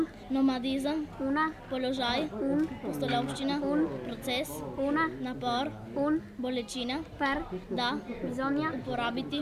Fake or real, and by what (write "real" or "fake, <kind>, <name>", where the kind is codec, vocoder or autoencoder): real